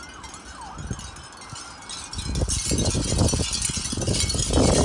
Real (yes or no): yes